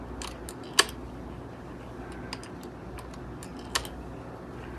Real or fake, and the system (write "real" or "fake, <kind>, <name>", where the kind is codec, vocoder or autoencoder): real